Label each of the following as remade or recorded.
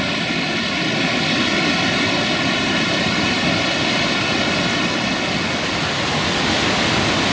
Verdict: recorded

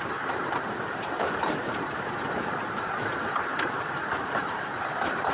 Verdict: remade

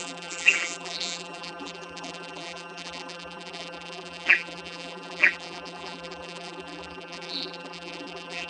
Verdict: remade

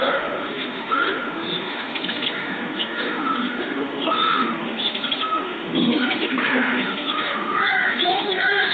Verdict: remade